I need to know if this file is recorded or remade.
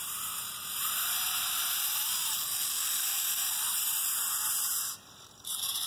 remade